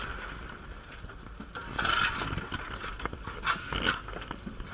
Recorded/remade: recorded